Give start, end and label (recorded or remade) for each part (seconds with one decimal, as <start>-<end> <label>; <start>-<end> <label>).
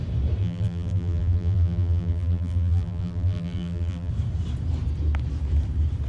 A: 0.0-0.4 recorded; 0.4-4.1 remade; 4.1-6.1 recorded